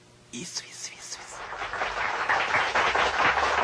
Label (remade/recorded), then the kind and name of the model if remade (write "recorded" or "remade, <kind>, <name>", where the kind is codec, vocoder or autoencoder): recorded